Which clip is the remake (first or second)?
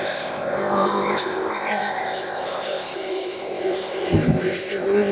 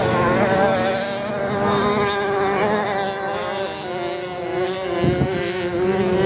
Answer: first